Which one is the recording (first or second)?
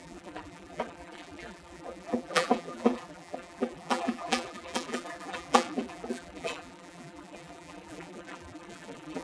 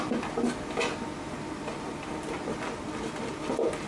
second